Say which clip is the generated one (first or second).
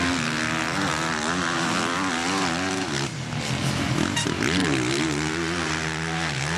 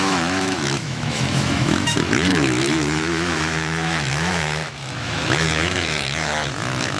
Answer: second